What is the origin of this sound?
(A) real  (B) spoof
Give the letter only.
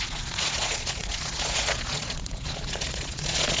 B